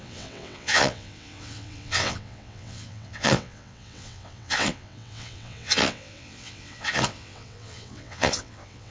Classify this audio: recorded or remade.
remade